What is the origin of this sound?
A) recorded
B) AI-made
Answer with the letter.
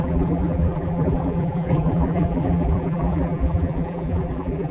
B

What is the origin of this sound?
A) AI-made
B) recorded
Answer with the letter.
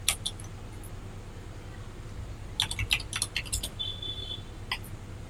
B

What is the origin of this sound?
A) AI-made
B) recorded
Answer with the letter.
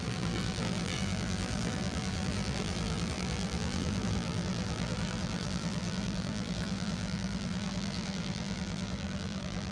A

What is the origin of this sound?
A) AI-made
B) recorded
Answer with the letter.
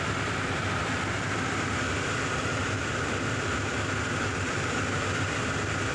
A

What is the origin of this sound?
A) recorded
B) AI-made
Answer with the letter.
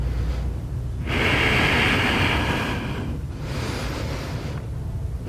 A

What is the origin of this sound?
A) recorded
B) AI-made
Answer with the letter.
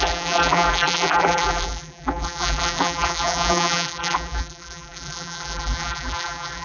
B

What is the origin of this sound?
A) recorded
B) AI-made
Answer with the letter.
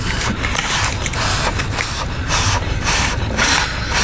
B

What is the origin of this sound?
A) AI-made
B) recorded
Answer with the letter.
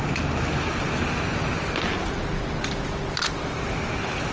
B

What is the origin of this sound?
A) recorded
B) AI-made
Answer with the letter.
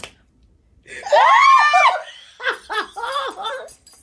B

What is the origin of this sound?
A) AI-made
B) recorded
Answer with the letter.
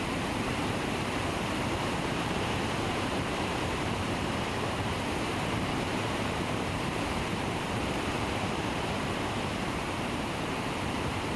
A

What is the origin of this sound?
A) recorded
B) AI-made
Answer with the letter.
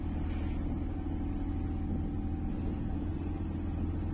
A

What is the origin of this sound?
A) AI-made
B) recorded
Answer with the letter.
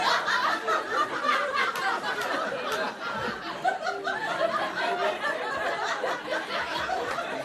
B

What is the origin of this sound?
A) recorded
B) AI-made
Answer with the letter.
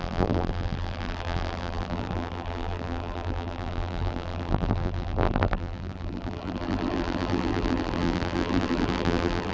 B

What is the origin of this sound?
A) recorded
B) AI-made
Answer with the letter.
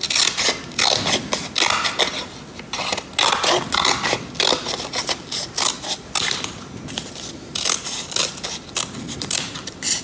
A